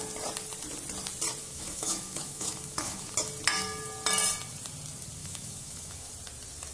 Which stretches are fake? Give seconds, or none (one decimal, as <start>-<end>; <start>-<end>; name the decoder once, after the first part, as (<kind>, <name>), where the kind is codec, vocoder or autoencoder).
1.4-3.1 (autoencoder, DAC-VAE); 5.2-6.1